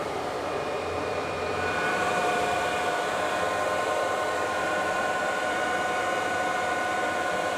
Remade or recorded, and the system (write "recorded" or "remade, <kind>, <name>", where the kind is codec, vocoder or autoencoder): remade, vocoder, BigVGAN v2